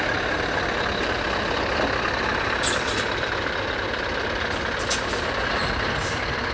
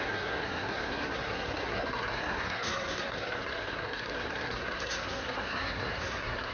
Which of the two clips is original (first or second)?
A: first